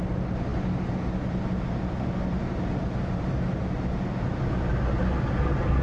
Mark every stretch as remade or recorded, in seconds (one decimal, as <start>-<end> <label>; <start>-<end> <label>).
0.0-5.8 recorded